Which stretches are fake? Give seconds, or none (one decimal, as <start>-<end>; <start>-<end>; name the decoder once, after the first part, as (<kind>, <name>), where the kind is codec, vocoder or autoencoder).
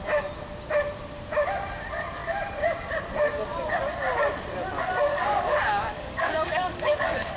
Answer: 5.1-7.4 (codec, DAC)